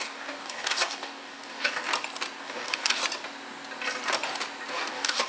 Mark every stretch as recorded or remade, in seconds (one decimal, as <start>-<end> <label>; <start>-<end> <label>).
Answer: 0.0-1.9 remade; 1.9-2.4 recorded; 2.4-3.0 remade; 3.0-4.7 recorded; 4.7-5.3 remade